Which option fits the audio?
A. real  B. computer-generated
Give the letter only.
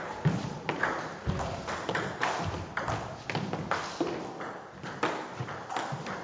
A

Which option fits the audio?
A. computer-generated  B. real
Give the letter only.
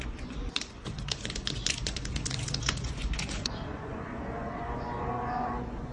A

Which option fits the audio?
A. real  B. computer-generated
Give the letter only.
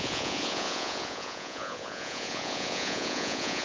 B